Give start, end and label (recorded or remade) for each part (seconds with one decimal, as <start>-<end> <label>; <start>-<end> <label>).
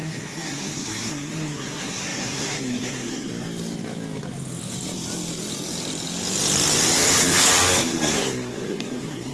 0.0-3.3 remade; 3.3-7.8 recorded; 7.8-9.3 remade